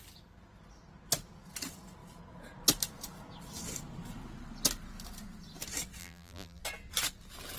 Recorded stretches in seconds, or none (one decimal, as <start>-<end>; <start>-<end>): 0.0-6.0; 6.6-7.6